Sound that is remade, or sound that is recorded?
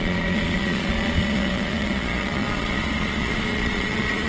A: remade